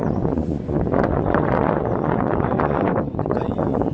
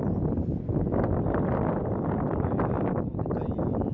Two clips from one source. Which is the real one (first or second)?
second